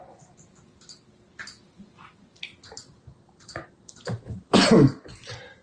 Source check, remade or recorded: recorded